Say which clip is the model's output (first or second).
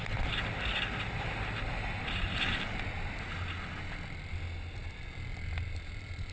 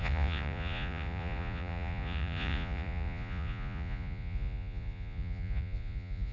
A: second